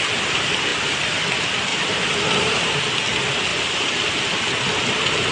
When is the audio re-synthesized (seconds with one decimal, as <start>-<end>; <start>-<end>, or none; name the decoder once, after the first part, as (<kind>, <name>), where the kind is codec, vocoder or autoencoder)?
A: 1.7-2.7 (vocoder, BigVGAN v2); 3.5-4.4